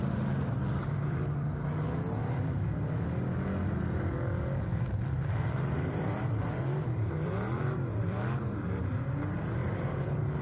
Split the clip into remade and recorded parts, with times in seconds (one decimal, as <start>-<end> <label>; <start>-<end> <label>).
0.0-0.8 recorded; 0.8-1.5 remade; 1.5-4.7 recorded; 4.7-8.9 remade; 8.9-9.6 recorded; 9.6-10.4 remade